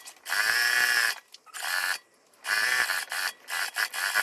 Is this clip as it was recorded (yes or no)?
yes